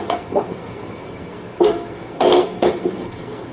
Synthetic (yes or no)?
yes